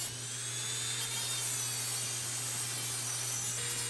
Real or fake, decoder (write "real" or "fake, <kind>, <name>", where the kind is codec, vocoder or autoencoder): real